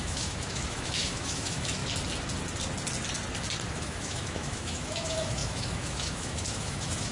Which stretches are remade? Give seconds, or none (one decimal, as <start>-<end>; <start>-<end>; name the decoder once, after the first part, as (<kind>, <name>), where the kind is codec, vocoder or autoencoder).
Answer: 0.0-1.8 (autoencoder, DAC-VAE); 3.7-7.1